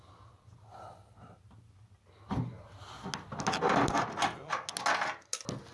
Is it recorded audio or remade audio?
recorded